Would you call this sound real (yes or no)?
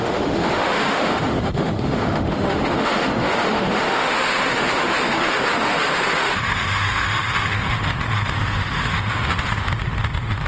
no